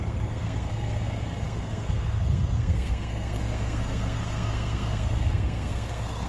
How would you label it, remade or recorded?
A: remade